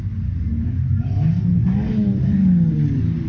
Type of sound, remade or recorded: recorded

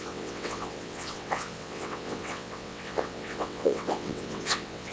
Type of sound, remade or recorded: remade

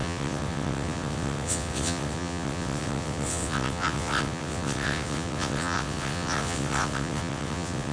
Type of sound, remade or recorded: remade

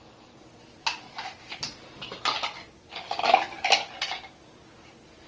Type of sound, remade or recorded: recorded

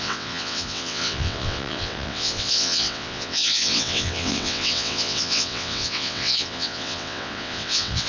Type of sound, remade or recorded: remade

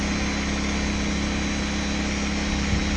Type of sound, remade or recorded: recorded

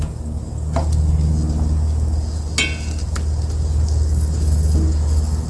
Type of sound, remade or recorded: recorded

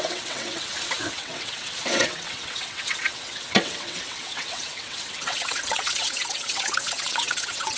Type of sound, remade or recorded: remade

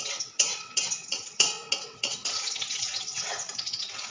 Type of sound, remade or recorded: remade